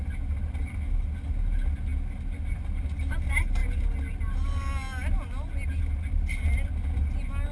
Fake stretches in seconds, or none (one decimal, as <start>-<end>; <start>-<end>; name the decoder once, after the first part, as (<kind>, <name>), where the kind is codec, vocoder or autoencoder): none